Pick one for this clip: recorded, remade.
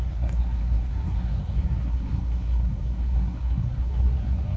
remade